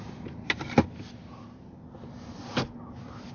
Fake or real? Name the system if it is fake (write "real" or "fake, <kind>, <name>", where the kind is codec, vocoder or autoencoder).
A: real